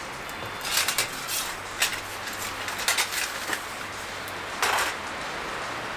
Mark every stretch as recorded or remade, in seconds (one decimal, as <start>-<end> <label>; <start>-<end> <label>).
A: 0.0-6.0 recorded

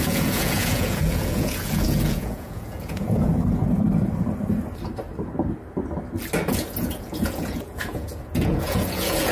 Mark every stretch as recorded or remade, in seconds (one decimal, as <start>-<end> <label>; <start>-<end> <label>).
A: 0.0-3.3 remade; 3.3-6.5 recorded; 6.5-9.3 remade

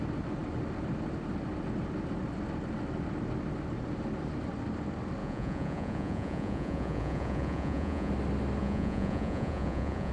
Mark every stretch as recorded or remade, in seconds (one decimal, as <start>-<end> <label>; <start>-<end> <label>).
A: 0.0-5.2 recorded; 5.2-8.1 remade; 8.1-8.6 recorded; 8.6-10.1 remade

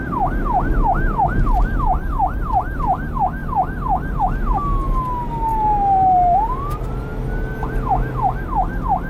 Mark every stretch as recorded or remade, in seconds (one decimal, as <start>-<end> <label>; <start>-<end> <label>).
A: 0.0-5.5 recorded; 5.5-6.5 remade; 6.5-9.1 recorded